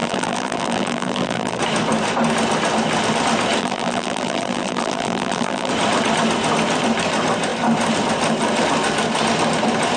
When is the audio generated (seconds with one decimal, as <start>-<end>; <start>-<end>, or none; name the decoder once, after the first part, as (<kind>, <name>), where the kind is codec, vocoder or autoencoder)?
0.0-1.6 (vocoder, BigVGAN v2); 3.6-5.7